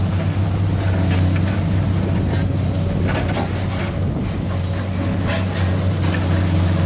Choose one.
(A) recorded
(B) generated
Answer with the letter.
A